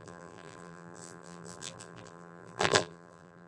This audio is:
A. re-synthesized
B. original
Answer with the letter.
A